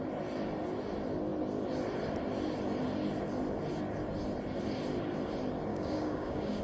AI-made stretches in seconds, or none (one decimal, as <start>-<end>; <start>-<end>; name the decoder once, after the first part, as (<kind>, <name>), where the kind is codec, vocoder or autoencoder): 5.7-6.6 (codec, DAC)